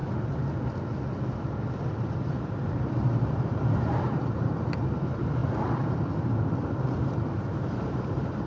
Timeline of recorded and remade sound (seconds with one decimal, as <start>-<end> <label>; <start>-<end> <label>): 0.0-2.0 recorded; 2.0-5.4 remade; 5.4-6.5 recorded; 6.5-8.5 remade

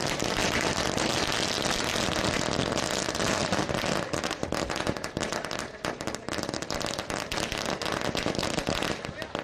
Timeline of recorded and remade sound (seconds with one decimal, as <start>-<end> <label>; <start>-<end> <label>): 0.0-0.4 recorded; 0.4-2.0 remade; 2.0-3.4 recorded; 3.4-6.8 remade; 6.8-9.4 recorded